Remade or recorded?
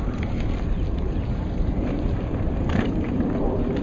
remade